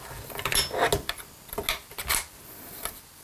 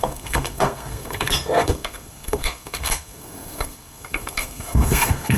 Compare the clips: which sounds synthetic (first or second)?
second